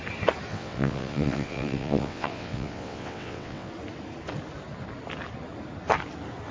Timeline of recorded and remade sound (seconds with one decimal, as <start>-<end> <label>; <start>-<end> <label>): 0.0-0.5 recorded; 0.5-3.7 remade; 3.7-6.5 recorded